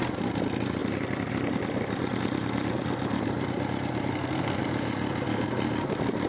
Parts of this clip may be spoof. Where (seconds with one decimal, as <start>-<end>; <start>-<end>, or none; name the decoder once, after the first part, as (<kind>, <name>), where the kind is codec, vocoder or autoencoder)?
4.1-4.6 (codec, SNAC)